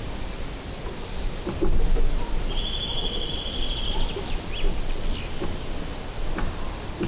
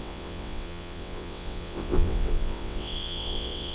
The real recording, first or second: first